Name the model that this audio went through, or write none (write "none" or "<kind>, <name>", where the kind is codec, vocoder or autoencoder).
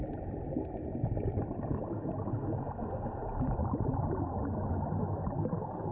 none